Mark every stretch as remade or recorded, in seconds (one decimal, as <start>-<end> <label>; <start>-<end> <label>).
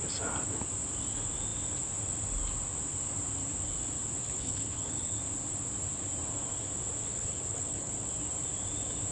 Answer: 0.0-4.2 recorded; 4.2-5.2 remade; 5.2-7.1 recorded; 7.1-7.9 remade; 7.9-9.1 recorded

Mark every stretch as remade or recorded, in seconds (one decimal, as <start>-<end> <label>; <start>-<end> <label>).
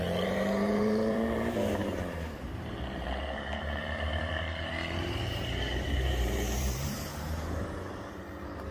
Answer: 0.0-1.8 remade; 1.8-2.6 recorded; 2.6-8.7 remade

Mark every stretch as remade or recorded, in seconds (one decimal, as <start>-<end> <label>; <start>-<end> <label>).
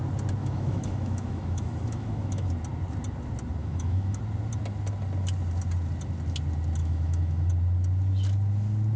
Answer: 0.0-0.4 recorded; 0.4-2.5 remade; 2.5-3.6 recorded; 3.6-4.2 remade; 4.2-6.8 recorded; 6.8-7.5 remade; 7.5-9.0 recorded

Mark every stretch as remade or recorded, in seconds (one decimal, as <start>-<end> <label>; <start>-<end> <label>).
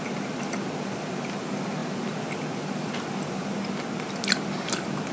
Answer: 0.0-5.1 recorded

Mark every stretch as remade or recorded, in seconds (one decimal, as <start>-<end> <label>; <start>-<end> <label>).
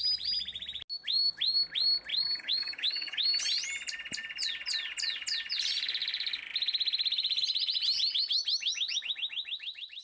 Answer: 0.0-2.1 recorded; 2.1-3.3 remade; 3.3-10.0 recorded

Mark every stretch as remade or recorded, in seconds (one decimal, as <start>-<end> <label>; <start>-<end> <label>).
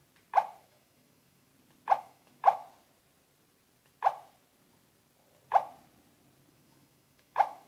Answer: 0.0-0.6 recorded; 0.6-1.5 remade; 1.5-2.0 recorded; 2.0-2.6 remade; 2.6-6.5 recorded; 6.5-7.7 remade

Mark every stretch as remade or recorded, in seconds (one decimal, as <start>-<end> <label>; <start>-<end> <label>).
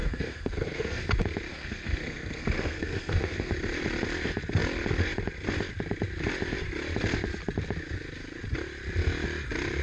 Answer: 0.0-1.0 remade; 1.0-1.5 recorded; 1.5-3.5 remade; 3.5-9.8 recorded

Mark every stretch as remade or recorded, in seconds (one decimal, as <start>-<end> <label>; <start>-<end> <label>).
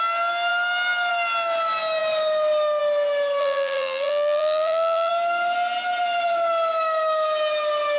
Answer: 0.0-3.4 recorded; 3.4-5.1 remade; 5.1-8.0 recorded